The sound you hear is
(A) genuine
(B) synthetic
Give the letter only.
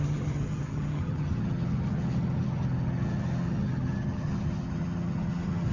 B